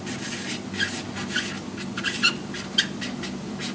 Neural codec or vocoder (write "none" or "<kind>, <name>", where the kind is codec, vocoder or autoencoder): none